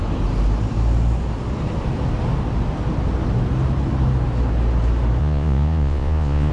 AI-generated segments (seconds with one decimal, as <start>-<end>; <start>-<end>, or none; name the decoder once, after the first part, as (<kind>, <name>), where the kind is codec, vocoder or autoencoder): 5.2-6.5 (vocoder, Vocos)